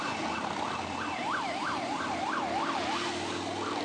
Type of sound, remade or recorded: recorded